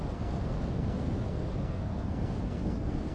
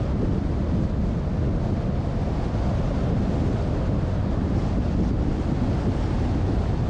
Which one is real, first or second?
second